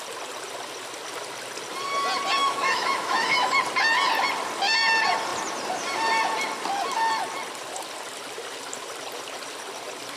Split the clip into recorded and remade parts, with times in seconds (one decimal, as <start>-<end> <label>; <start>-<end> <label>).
0.0-2.4 recorded; 2.4-3.5 remade; 3.5-10.2 recorded